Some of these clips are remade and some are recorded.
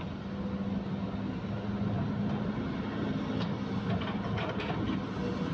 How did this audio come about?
recorded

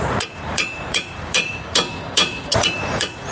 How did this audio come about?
remade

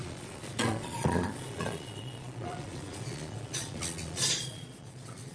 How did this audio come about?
remade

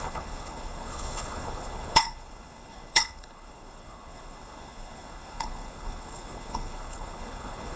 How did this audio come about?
remade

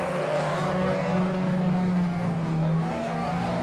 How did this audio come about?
remade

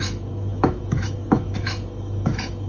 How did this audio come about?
remade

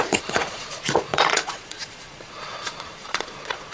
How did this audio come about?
remade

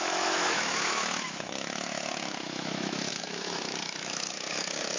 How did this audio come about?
remade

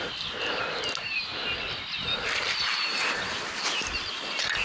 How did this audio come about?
recorded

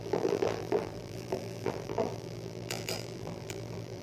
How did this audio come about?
remade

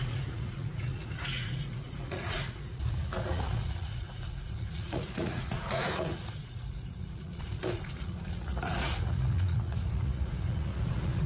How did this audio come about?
remade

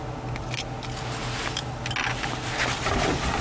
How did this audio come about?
recorded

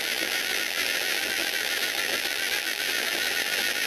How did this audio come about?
remade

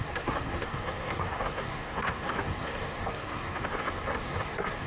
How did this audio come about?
remade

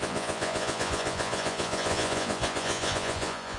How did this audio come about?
remade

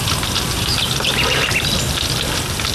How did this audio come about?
recorded